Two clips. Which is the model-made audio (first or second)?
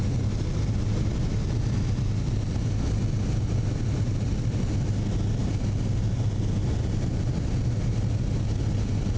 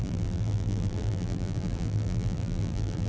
second